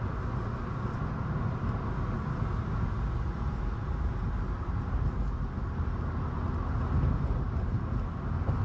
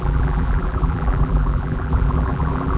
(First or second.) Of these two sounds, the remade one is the second